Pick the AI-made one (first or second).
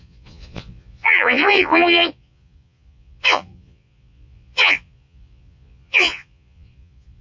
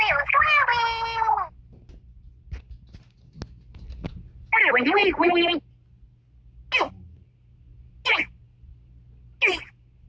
first